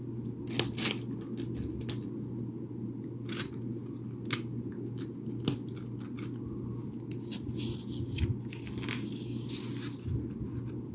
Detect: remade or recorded recorded